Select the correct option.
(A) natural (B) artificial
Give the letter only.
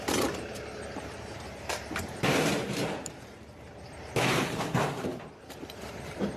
B